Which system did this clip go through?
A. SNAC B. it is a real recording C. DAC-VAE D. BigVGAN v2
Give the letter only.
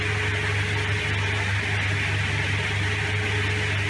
B